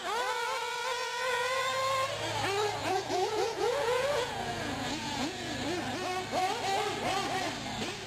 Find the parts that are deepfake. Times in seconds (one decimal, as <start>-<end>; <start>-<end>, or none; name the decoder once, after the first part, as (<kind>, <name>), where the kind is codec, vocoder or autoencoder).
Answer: 1.0-1.6 (vocoder, Vocos); 2.8-5.5